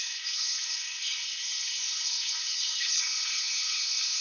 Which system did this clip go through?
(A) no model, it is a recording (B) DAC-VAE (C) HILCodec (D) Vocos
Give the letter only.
C